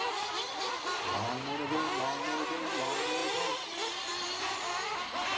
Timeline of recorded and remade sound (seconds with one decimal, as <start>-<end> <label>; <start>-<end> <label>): 0.0-5.4 recorded